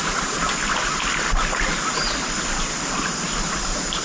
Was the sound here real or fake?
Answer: real